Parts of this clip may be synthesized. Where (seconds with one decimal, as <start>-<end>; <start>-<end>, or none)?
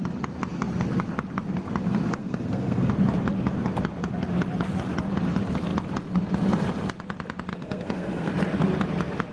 2.2-2.9; 7.5-8.3